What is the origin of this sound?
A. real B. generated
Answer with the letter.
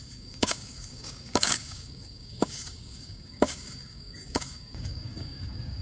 B